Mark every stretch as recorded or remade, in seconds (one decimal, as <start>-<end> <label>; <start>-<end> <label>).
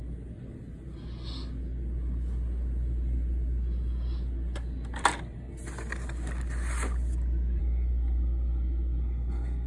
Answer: 0.0-7.6 recorded; 7.6-9.7 remade